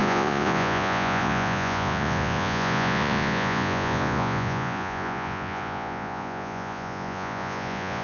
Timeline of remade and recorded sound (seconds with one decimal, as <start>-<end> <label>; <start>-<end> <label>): 0.0-8.0 remade